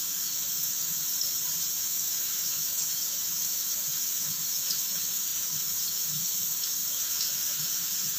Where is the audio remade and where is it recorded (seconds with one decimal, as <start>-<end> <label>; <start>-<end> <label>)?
0.0-1.1 remade; 1.1-1.7 recorded; 1.7-8.2 remade